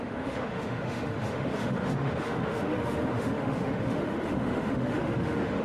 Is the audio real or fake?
fake